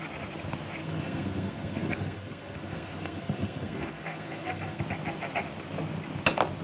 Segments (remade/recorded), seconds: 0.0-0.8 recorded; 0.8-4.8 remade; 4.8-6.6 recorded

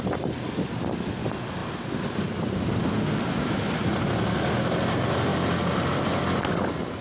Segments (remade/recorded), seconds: 0.0-7.0 recorded

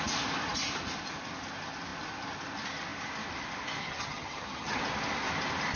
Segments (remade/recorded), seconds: 0.0-3.8 recorded; 3.8-4.8 remade; 4.8-5.8 recorded

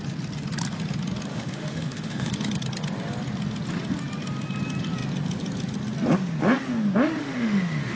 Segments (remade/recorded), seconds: 0.0-1.3 recorded; 1.3-2.3 remade; 2.3-7.2 recorded; 7.2-8.0 remade

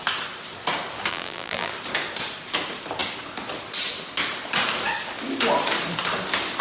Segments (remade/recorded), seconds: 0.0-1.1 recorded; 1.1-1.7 remade; 1.7-6.6 recorded